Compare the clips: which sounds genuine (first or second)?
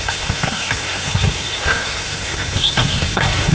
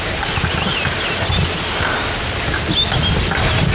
second